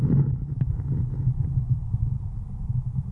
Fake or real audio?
real